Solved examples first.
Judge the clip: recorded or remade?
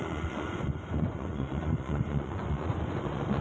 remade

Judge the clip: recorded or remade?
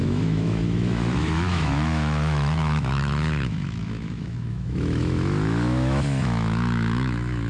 remade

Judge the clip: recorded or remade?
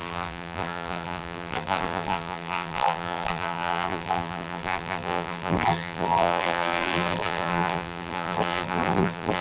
remade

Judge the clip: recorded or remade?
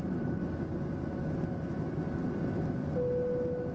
recorded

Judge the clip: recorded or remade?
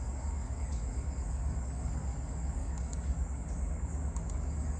remade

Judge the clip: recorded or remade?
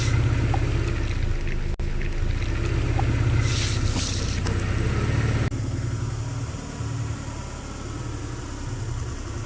recorded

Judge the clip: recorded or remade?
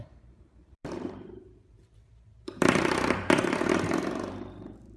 remade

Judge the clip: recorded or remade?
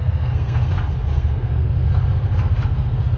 remade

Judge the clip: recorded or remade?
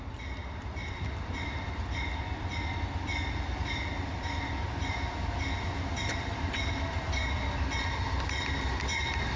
recorded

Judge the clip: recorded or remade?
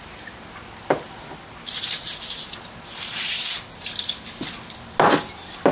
recorded